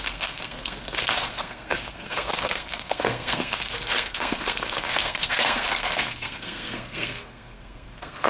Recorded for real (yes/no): no